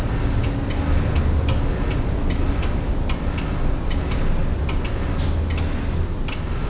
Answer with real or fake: real